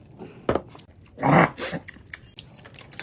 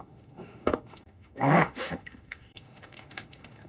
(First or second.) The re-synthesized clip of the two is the second